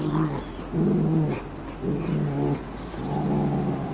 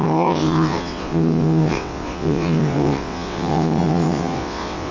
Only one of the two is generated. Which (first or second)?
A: second